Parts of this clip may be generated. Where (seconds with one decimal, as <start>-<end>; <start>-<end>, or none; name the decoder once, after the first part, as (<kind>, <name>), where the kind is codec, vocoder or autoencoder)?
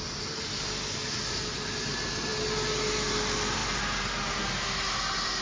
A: none